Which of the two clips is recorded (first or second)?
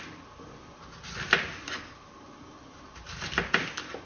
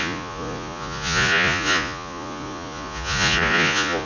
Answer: first